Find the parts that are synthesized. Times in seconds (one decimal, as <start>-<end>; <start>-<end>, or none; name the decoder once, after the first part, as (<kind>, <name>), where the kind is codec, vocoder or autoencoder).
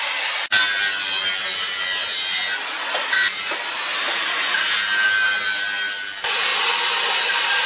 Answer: none